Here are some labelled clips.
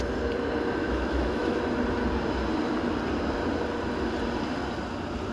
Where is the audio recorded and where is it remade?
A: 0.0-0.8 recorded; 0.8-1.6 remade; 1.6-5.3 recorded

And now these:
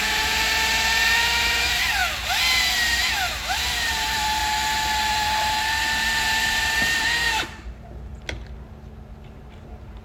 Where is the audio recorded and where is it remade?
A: 0.0-2.0 remade; 2.0-3.0 recorded; 3.0-4.4 remade; 4.4-5.1 recorded; 5.1-8.1 remade; 8.1-9.5 recorded; 9.5-10.0 remade